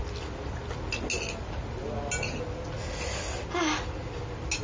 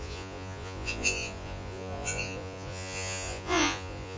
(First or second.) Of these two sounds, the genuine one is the first